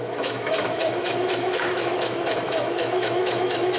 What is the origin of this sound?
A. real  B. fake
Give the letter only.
B